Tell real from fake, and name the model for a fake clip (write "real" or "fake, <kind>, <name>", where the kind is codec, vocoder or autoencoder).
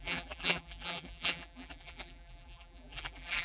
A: fake, vocoder, BigVGAN v2